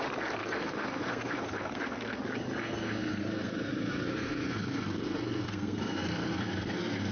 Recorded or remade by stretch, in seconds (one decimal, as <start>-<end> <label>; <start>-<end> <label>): 0.0-0.4 recorded; 0.4-2.2 remade; 2.2-2.6 recorded; 2.6-7.1 remade